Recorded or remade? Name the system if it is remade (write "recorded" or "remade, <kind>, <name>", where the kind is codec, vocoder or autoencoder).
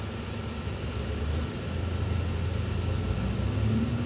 recorded